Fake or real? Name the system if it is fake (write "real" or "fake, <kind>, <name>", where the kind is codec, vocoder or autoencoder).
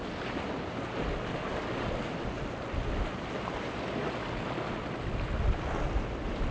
real